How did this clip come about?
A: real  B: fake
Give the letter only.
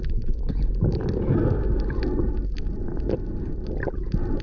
A